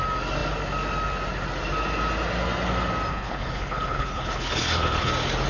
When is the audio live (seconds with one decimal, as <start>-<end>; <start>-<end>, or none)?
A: 0.0-3.1; 5.1-5.5